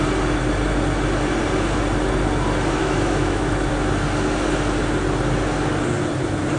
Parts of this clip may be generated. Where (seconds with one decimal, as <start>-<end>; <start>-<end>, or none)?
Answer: 2.8-3.7